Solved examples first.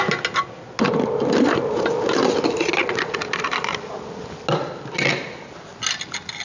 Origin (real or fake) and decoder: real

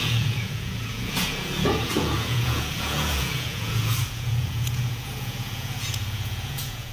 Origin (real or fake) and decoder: fake, vocoder, Vocos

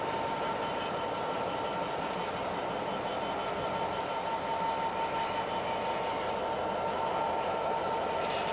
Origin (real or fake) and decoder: real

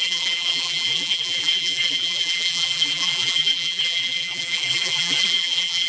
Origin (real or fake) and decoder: fake, vocoder, BigVGAN v2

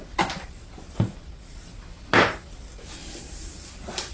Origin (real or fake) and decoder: real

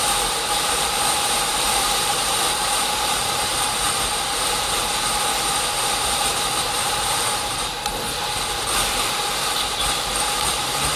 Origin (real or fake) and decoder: fake, vocoder, BigVGAN v2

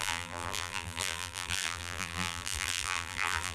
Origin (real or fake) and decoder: fake, vocoder, BigVGAN v2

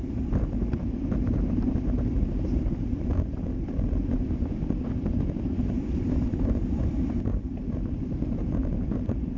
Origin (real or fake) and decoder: fake, vocoder, BigVGAN v2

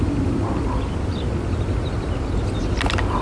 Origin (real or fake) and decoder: real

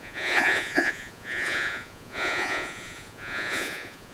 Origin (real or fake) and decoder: fake, vocoder, Vocos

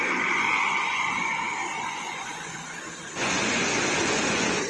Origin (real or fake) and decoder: fake, vocoder, Vocos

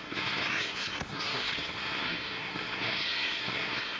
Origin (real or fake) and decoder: fake, codec, SNAC